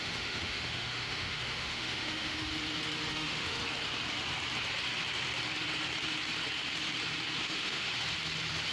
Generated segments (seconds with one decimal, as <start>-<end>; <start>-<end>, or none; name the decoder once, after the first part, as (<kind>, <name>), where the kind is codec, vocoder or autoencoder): 0.0-2.5 (autoencoder, DAC-VAE); 3.1-3.6; 7.4-7.9